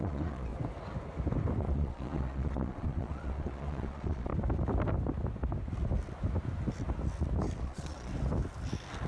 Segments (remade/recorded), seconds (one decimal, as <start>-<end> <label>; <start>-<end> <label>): 0.0-0.5 remade; 0.5-1.6 recorded; 1.6-4.3 remade; 4.3-7.6 recorded; 7.6-8.1 remade; 8.1-9.1 recorded